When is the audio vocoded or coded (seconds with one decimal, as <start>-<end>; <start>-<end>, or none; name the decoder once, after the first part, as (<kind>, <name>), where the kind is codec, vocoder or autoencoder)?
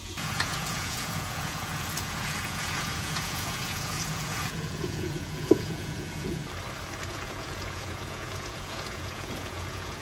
0.0-6.4 (vocoder, Vocos); 7.1-10.0